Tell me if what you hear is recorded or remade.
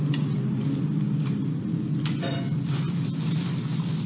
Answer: recorded